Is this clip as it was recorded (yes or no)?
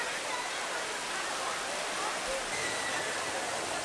yes